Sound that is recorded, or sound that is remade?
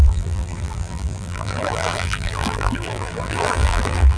remade